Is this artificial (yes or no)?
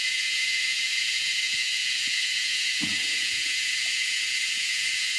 yes